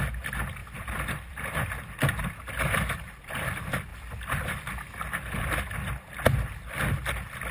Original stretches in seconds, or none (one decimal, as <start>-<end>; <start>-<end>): 0.0-0.6; 2.1-3.9; 5.5-7.5